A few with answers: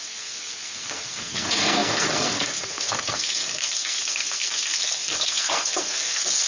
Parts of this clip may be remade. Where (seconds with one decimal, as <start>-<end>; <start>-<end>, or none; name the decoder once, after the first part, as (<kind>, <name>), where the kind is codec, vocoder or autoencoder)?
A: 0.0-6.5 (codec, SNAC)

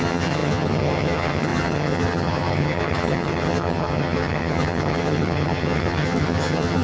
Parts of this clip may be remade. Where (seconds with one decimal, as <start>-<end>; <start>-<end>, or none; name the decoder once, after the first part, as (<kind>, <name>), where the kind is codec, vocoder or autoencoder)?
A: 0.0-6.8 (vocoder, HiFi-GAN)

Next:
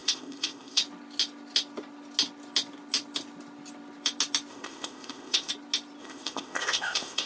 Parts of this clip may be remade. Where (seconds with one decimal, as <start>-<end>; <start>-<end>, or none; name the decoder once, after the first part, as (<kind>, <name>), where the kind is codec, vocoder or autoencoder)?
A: 0.0-0.8 (codec, ZipCodec); 4.5-5.5; 6.0-7.3

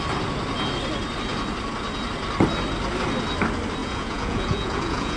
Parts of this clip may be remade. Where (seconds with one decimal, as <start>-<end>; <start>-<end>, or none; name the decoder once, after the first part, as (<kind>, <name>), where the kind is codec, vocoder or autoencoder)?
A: 3.8-5.2 (vocoder, Vocos)

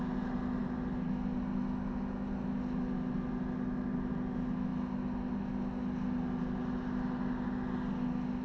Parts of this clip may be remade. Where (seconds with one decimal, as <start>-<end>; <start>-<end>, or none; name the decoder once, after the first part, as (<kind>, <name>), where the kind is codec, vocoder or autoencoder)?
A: none

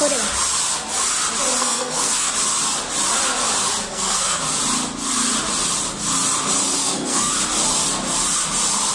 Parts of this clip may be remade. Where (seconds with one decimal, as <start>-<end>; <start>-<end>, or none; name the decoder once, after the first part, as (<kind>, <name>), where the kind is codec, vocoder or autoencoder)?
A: 1.6-2.3 (codec, SNAC); 3.9-4.4; 6.8-7.3

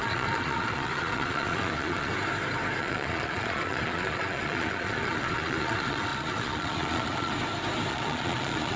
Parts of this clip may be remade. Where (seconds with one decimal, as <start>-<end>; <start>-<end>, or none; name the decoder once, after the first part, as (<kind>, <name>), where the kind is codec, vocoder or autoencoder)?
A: 0.0-2.1 (vocoder, Vocos); 2.8-7.3; 7.9-8.8